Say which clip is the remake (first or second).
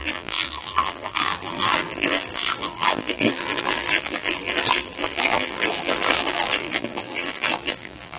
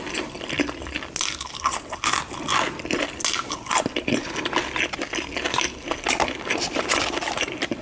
first